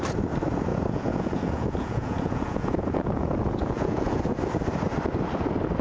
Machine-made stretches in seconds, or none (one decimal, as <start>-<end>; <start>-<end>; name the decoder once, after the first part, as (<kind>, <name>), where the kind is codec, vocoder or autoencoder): 0.7-4.2 (vocoder, Vocos)